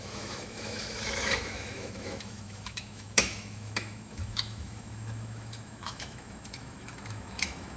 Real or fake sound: fake